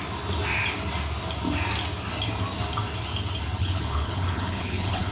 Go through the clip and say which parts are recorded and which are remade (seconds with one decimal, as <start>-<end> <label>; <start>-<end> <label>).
0.0-3.6 recorded; 3.6-5.1 remade